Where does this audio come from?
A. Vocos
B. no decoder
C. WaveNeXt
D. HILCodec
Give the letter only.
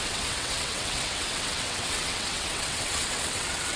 C